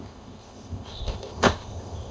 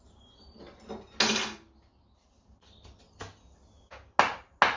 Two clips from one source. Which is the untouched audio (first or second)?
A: second